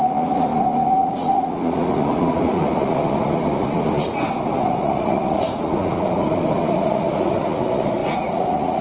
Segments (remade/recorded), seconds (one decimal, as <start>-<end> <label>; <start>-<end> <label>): 0.0-8.8 remade